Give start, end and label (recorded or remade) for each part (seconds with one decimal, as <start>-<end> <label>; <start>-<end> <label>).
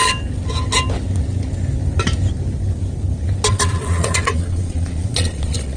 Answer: 0.0-3.5 recorded; 3.5-5.8 remade